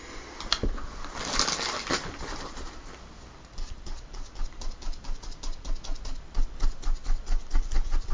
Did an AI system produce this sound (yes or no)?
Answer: yes